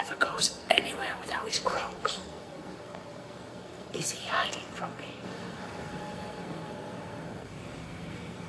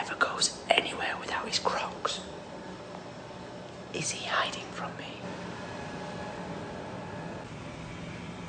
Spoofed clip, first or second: first